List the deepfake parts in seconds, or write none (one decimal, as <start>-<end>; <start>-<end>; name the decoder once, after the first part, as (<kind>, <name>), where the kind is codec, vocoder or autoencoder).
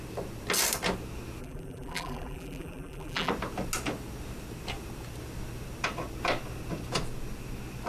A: 1.4-3.3 (vocoder, BigVGAN v2)